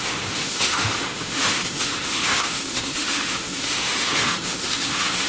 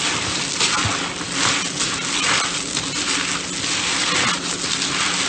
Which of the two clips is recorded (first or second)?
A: second